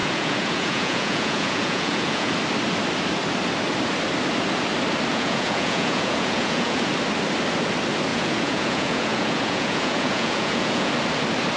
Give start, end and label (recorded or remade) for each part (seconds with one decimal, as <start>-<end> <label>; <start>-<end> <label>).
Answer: 0.0-2.3 remade; 2.3-5.1 recorded; 5.1-6.9 remade; 6.9-8.1 recorded; 8.1-10.9 remade; 10.9-11.6 recorded